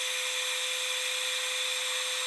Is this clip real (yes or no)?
yes